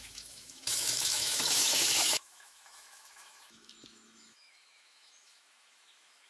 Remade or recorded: remade